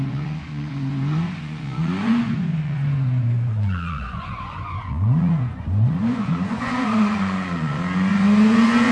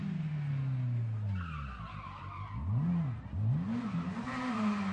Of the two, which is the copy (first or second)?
first